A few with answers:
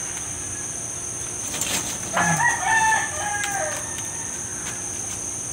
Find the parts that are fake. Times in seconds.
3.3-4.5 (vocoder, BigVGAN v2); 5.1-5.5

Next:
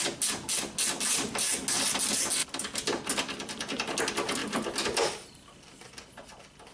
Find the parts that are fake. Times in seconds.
2.4-4.0 (vocoder, BigVGAN v2); 4.4-5.9

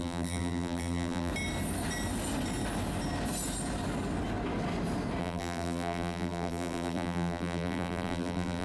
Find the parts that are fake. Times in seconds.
0.0-1.3 (vocoder, BigVGAN v2); 5.2-8.6

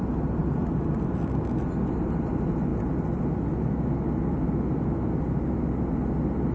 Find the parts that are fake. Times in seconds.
0.4-2.3 (vocoder, BigVGAN v2)

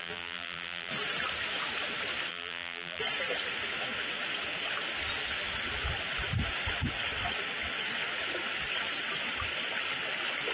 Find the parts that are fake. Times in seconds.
0.0-0.9 (vocoder, BigVGAN v2); 2.3-3.0

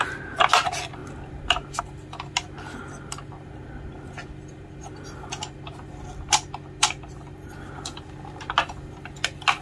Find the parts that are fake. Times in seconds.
none

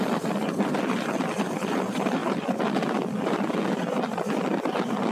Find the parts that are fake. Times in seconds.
none